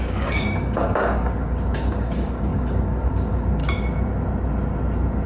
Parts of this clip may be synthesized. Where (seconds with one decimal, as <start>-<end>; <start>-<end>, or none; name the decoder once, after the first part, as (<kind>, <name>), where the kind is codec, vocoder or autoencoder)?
0.0-3.6 (codec, DAC)